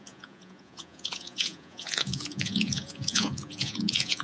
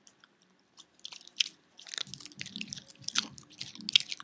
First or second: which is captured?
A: second